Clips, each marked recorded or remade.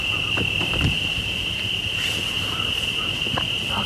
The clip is recorded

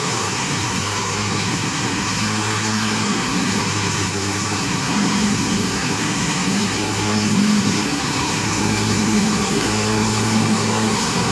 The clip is remade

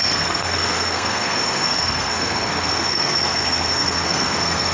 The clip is remade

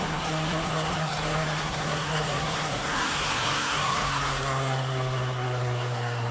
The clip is remade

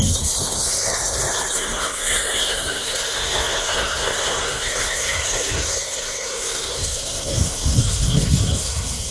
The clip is remade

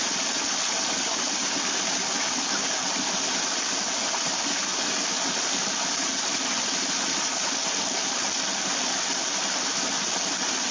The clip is recorded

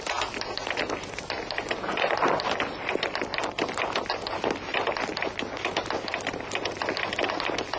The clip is recorded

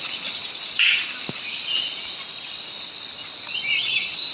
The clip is recorded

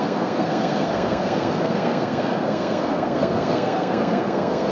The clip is remade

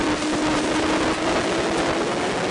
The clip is recorded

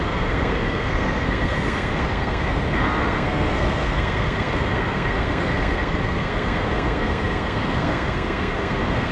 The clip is remade